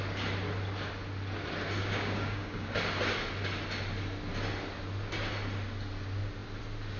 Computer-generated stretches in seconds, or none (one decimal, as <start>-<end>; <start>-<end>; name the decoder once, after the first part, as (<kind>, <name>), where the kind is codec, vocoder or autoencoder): 1.8-2.7 (codec, DAC)